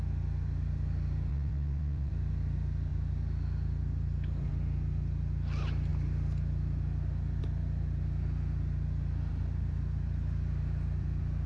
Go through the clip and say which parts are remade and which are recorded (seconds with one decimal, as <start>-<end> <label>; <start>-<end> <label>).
0.0-1.3 recorded; 1.3-2.1 remade; 2.1-11.5 recorded